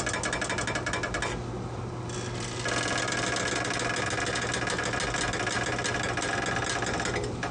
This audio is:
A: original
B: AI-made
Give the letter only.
A